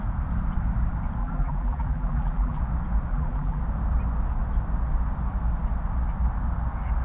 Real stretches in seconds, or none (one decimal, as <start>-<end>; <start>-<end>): 0.0-1.2; 2.6-3.1; 3.6-7.0